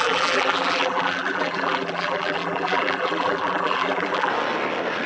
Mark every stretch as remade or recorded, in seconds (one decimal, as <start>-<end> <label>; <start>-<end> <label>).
0.0-4.3 remade; 4.3-5.1 recorded